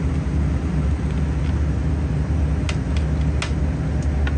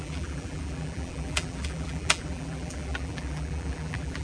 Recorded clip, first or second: first